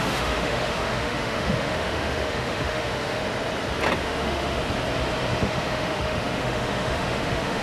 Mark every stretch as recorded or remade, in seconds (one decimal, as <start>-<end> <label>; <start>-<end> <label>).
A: 0.0-3.2 remade; 3.2-4.0 recorded; 4.0-4.6 remade; 4.6-5.4 recorded; 5.4-7.6 remade